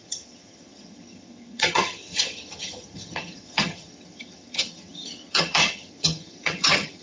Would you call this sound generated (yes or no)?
yes